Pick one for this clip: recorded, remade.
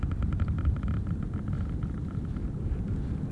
recorded